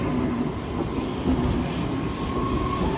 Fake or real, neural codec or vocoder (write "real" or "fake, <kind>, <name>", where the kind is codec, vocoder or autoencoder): real